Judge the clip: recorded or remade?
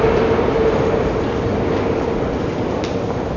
recorded